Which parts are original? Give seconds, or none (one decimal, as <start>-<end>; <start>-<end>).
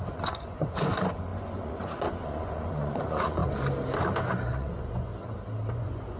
3.4-4.5; 5.1-5.7